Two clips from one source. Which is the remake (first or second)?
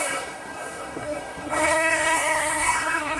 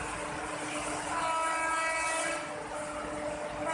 first